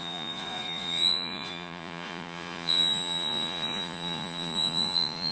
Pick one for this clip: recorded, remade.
remade